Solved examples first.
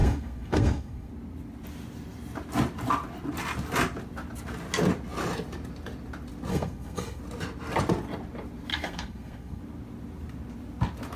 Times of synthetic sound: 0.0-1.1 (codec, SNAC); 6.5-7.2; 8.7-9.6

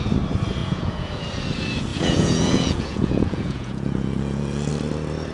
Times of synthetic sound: 0.6-1.2 (vocoder, Vocos); 1.9-4.7

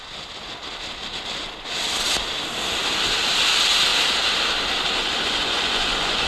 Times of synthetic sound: 5.0-6.3 (vocoder, Vocos)

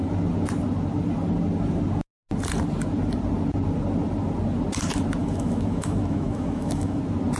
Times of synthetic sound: 5.2-7.0 (autoencoder, DAC-VAE)

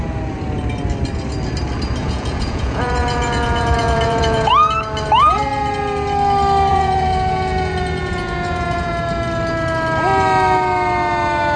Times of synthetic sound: 2.0-4.5 (vocoder, Vocos); 6.7-8.9

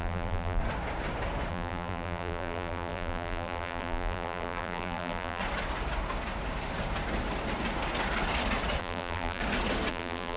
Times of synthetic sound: 0.0-0.6 (vocoder, BigVGAN v2); 1.5-5.4; 8.8-9.4; 9.9-10.4